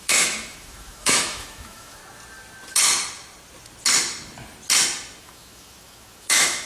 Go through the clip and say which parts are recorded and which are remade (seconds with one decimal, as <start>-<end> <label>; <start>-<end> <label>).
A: 0.0-2.0 remade; 2.0-5.2 recorded; 5.2-6.7 remade